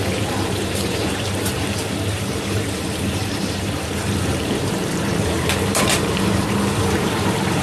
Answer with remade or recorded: remade